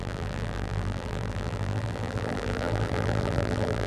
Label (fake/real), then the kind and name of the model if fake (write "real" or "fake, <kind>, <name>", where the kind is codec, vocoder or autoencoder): fake, vocoder, BigVGAN v2